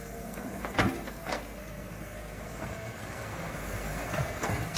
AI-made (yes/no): yes